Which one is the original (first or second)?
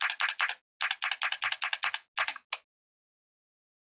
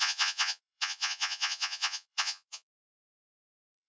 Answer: first